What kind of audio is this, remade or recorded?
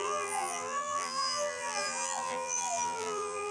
remade